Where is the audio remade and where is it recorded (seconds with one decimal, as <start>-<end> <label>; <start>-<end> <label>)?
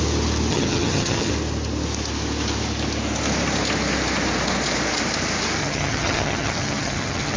0.0-0.5 recorded; 0.5-1.3 remade; 1.3-5.6 recorded; 5.6-7.4 remade